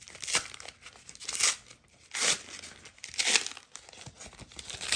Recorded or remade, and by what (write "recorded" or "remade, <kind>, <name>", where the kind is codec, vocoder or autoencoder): recorded